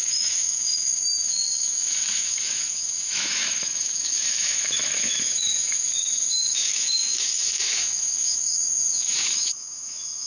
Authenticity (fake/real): fake